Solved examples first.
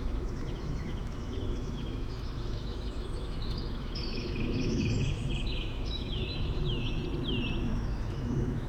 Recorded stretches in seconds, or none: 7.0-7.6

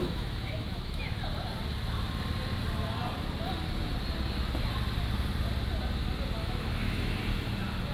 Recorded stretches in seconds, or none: 1.2-6.4; 7.2-7.9